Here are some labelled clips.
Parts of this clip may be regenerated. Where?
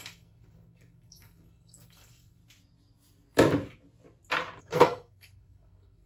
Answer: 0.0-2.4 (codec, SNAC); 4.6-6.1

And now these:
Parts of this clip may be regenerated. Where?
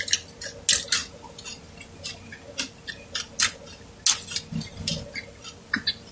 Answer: none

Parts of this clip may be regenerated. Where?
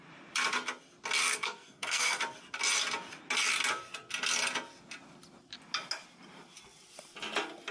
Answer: 1.2-2.2 (codec, SNAC)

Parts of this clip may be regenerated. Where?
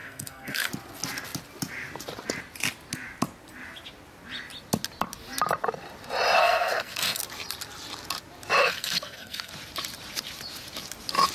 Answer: 0.0-0.7 (codec, SNAC); 6.4-7.2; 8.6-9.5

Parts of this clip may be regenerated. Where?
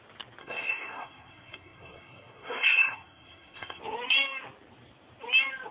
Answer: 0.4-3.8 (codec, SNAC)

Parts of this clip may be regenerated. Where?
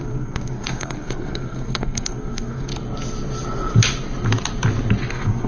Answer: 0.0-2.7 (codec, SNAC); 5.1-5.5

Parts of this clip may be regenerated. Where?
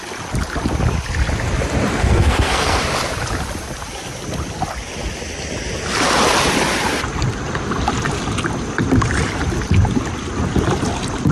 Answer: 1.9-2.8 (codec, SNAC)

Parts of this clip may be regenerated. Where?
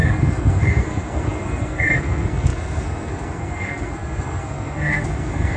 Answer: 0.0-5.6 (codec, SNAC)